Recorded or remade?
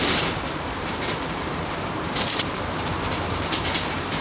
remade